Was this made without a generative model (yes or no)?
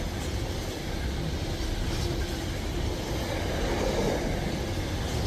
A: yes